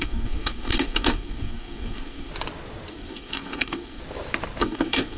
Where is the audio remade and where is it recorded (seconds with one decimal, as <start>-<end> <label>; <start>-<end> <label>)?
0.0-2.3 remade; 2.3-2.9 recorded; 2.9-4.0 remade; 4.0-4.6 recorded; 4.6-5.2 remade